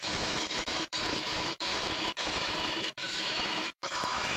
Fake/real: fake